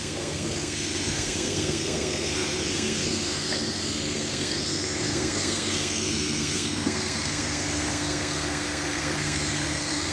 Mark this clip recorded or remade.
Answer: remade